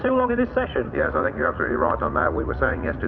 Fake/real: fake